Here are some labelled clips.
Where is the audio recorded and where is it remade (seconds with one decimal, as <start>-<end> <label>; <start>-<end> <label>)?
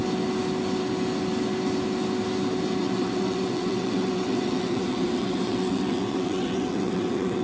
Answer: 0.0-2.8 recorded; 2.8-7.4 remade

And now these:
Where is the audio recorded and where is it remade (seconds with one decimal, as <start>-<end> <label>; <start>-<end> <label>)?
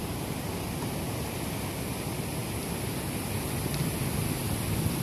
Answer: 0.0-5.0 recorded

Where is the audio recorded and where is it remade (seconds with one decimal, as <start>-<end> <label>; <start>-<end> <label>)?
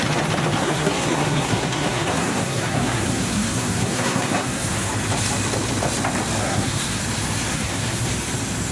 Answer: 0.0-0.6 recorded; 0.6-4.9 remade; 4.9-6.4 recorded; 6.4-7.0 remade; 7.0-7.5 recorded; 7.5-8.1 remade; 8.1-8.7 recorded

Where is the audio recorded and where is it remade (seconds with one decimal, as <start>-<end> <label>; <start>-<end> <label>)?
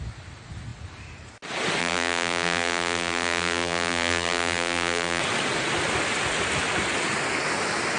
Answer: 0.0-1.8 recorded; 1.8-5.2 remade; 5.2-8.0 recorded